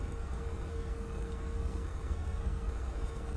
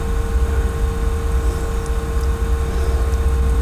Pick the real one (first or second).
second